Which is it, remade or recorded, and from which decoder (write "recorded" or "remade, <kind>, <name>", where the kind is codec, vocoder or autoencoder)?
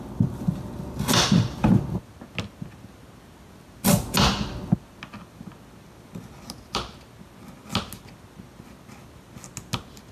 recorded